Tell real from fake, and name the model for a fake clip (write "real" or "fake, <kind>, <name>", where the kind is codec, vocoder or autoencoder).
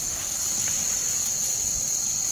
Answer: real